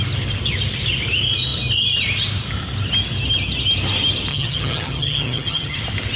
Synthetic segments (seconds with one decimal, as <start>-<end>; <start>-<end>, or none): 4.3-5.8